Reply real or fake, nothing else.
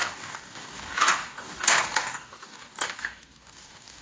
fake